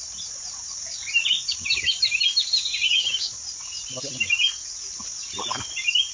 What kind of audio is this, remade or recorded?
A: recorded